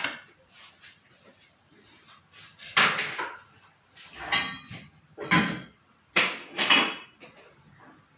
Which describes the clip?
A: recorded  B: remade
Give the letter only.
A